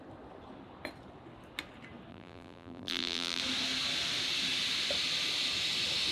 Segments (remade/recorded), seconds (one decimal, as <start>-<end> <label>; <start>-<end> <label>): 0.0-2.1 recorded; 2.1-3.4 remade; 3.4-6.1 recorded